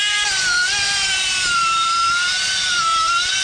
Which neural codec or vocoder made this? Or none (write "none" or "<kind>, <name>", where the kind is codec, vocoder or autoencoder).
vocoder, BigVGAN v2